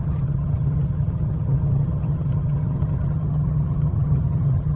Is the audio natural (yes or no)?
no